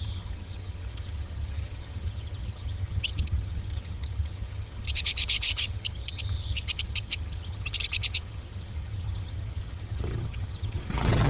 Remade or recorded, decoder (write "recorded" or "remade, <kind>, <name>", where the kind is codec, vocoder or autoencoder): remade, vocoder, HiFi-GAN